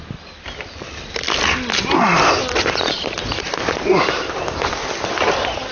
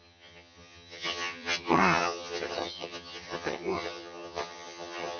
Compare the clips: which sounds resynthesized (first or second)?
second